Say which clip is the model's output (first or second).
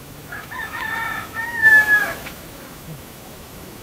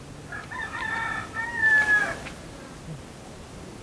first